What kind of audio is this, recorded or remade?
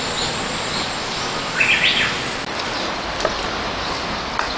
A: recorded